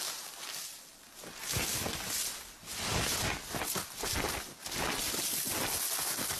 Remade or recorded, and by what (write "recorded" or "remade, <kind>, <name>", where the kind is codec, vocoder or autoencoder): recorded